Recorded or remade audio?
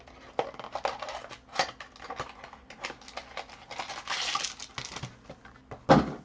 recorded